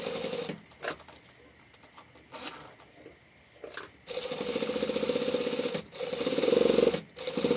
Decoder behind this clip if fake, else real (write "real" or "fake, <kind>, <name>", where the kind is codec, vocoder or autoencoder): real